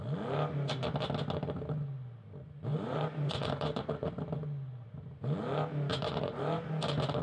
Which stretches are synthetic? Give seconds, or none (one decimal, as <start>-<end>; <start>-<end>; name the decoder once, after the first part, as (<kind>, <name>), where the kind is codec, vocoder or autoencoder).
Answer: 2.7-4.1 (vocoder, Vocos); 5.9-6.4